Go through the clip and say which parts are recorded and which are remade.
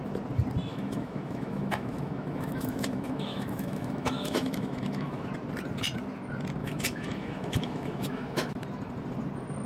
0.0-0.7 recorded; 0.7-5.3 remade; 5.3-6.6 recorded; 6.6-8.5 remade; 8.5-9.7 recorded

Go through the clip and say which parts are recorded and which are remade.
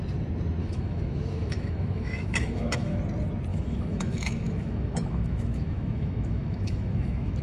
0.0-0.6 recorded; 0.6-3.0 remade; 3.0-3.5 recorded; 3.5-7.4 remade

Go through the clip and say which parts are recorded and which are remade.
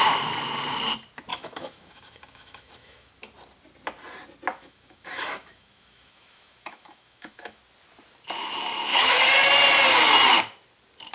0.0-1.3 recorded; 1.3-3.1 remade; 3.1-4.5 recorded; 4.5-7.6 remade; 7.6-8.9 recorded; 8.9-9.4 remade; 9.4-11.1 recorded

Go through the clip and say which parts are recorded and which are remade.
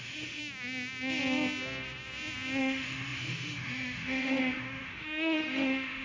0.0-0.4 remade; 0.4-2.6 recorded; 2.6-6.0 remade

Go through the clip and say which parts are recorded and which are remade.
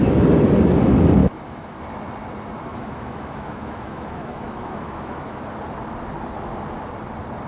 0.0-1.2 recorded; 1.2-1.8 remade; 1.8-2.7 recorded; 2.7-5.4 remade; 5.4-7.5 recorded